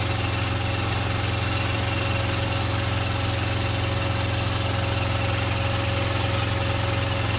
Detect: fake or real real